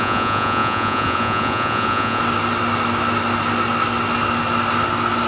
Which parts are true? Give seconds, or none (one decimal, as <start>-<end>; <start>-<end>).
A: 2.2-5.3